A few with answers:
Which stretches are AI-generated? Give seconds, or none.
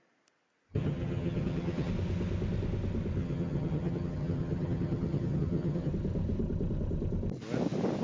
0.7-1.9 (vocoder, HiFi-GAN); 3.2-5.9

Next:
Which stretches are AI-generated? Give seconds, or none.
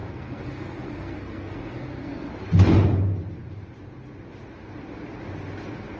0.0-2.3 (codec, SNAC)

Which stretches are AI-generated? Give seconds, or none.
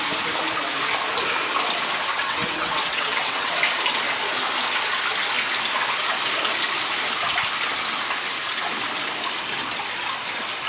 2.1-3.5 (vocoder, WaveNeXt)